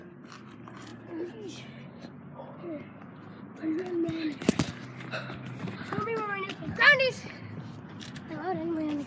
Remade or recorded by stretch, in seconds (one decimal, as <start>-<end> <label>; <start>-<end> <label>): 0.0-9.1 recorded